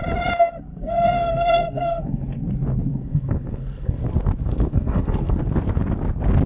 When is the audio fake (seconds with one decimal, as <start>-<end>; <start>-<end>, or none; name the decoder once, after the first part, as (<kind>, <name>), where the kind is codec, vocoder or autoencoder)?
0.7-2.4 (codec, SNAC); 2.9-4.0; 4.4-5.4